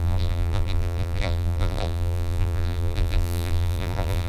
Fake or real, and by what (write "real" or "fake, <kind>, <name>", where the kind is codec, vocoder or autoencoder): fake, vocoder, BigVGAN v2